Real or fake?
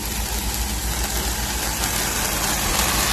real